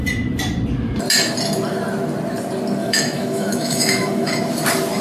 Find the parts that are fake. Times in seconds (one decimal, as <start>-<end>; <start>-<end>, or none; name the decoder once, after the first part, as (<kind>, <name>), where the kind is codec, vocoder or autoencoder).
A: 2.8-4.3 (autoencoder, DAC-VAE)